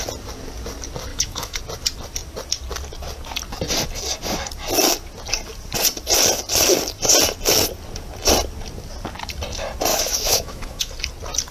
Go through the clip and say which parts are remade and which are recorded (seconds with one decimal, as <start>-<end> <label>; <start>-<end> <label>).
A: 0.0-1.1 recorded; 1.1-1.6 remade; 1.6-9.9 recorded; 9.9-10.9 remade; 10.9-11.5 recorded